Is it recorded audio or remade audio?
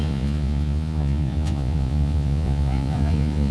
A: remade